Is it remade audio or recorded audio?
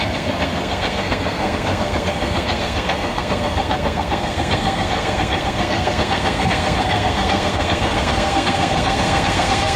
remade